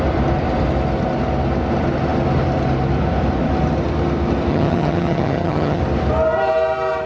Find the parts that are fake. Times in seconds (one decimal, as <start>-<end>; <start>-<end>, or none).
4.5-5.8

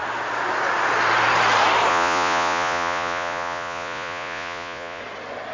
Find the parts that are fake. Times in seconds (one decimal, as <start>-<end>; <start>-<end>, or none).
1.9-5.0